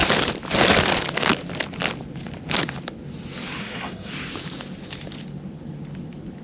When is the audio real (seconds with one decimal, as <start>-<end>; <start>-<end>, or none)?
0.0-3.6; 4.1-6.4